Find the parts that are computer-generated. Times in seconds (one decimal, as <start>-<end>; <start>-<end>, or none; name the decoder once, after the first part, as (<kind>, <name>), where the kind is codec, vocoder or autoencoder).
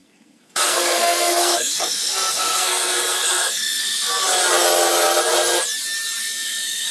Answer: 0.0-4.1 (codec, SNAC); 6.2-6.9